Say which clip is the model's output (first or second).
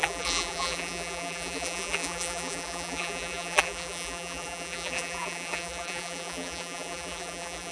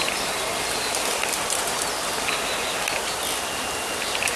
first